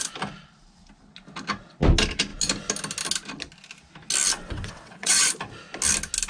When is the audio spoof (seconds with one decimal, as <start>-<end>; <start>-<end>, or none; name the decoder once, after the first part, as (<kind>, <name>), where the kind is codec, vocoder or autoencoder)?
4.4-5.3 (vocoder, WaveNeXt)